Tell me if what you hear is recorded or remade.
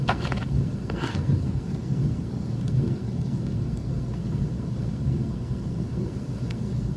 remade